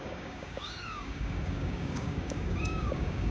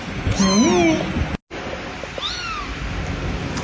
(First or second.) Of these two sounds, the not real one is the first